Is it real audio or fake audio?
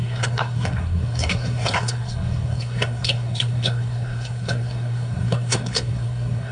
fake